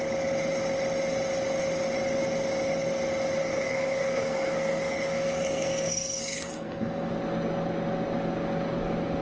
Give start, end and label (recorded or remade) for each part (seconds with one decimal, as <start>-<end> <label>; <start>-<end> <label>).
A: 0.0-3.4 recorded; 3.4-7.1 remade; 7.1-9.2 recorded